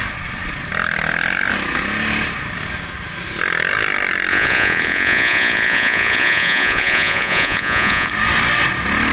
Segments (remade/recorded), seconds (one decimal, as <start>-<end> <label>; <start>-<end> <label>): 0.0-4.3 recorded; 4.3-8.1 remade; 8.1-9.1 recorded